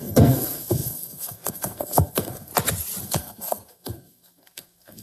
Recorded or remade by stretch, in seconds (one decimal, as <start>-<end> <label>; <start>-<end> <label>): 0.0-2.5 remade; 2.5-3.0 recorded; 3.0-5.0 remade